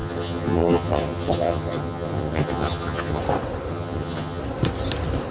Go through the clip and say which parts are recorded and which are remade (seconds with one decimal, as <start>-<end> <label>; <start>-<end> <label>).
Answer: 0.0-3.2 remade; 3.2-3.7 recorded; 3.7-4.4 remade; 4.4-5.3 recorded